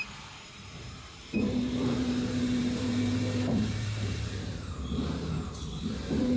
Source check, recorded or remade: remade